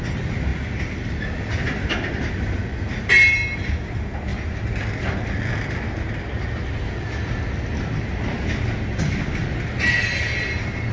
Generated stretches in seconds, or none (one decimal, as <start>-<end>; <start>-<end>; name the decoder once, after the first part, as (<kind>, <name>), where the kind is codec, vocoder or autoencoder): none